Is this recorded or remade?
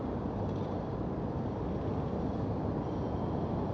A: recorded